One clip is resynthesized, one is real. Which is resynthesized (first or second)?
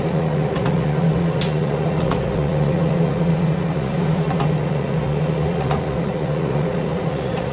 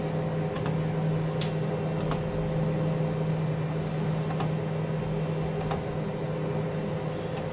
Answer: first